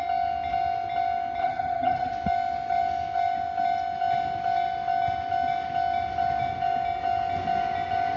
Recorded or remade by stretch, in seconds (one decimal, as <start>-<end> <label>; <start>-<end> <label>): 0.0-1.4 recorded; 1.4-2.1 remade; 2.1-8.2 recorded

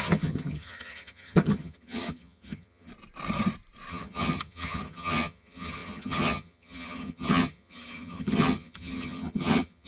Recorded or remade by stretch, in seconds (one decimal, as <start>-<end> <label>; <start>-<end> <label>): 0.0-2.9 remade; 2.9-3.9 recorded; 3.9-9.9 remade

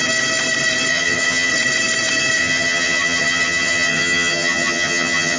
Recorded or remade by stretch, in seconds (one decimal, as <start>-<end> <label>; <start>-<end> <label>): 0.0-0.9 recorded; 0.9-1.5 remade; 1.5-2.4 recorded; 2.4-5.4 remade

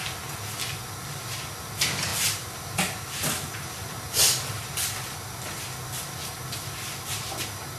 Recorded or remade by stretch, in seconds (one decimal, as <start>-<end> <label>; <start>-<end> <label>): 0.0-7.8 recorded

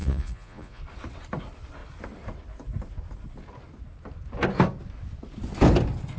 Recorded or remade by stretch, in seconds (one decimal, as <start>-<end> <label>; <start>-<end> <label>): 0.0-0.8 remade; 0.8-6.2 recorded

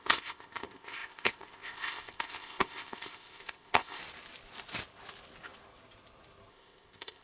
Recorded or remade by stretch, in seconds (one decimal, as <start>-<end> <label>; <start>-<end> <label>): 0.0-4.0 remade; 4.0-6.5 recorded; 6.5-7.2 remade